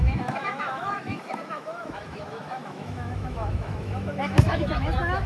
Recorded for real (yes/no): no